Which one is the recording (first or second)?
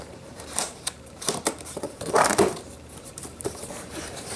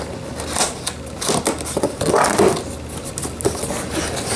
second